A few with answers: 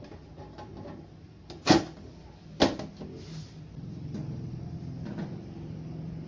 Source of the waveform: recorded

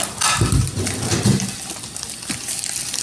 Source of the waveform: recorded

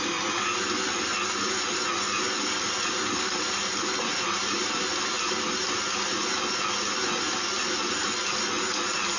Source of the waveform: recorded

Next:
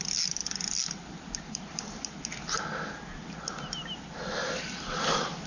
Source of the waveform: recorded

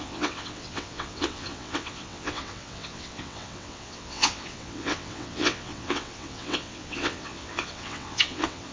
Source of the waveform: remade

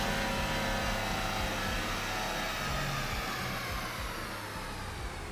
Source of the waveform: recorded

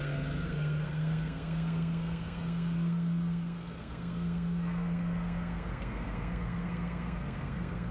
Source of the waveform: remade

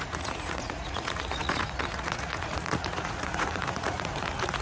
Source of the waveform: remade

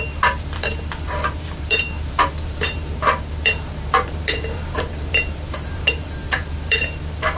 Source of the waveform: remade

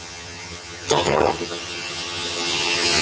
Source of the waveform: remade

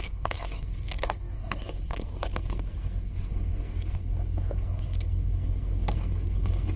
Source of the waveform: remade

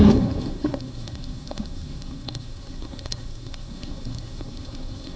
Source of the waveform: remade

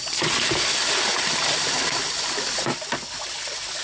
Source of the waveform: recorded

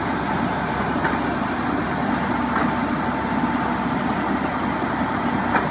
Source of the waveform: recorded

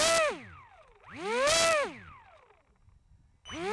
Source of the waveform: recorded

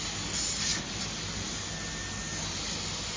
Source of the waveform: recorded